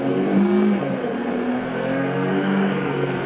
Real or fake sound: fake